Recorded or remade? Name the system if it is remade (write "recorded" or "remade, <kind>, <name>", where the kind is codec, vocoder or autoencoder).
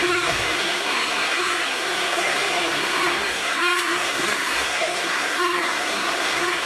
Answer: remade, codec, SNAC